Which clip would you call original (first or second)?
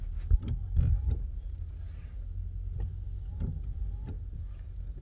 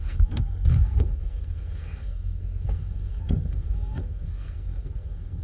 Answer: first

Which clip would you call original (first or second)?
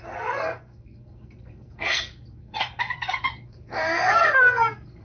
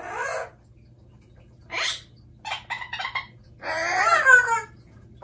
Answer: second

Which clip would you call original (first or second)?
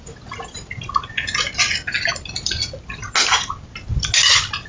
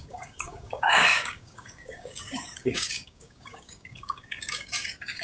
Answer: first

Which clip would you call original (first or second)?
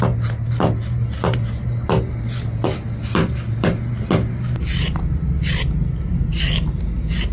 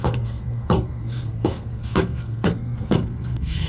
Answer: first